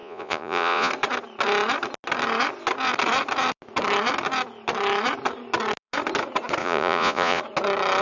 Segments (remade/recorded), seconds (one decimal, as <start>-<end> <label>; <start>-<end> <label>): 0.0-0.9 remade; 0.9-6.6 recorded; 6.6-7.4 remade; 7.4-8.0 recorded